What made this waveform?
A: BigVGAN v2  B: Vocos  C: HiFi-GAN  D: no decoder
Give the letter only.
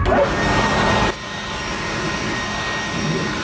D